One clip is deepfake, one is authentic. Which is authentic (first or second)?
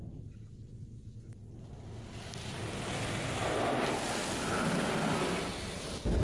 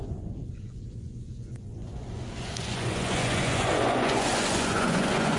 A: first